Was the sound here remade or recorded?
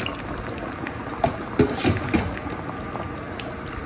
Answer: recorded